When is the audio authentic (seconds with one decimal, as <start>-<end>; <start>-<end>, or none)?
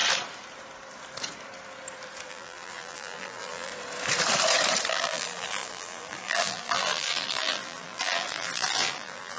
0.0-2.3; 3.7-4.9